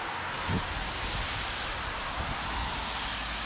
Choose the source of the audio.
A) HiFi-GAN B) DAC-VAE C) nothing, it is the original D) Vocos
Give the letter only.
C